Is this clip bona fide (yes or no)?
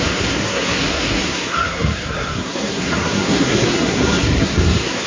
no